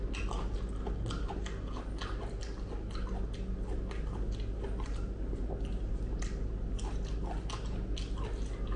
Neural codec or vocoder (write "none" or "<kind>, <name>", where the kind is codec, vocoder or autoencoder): none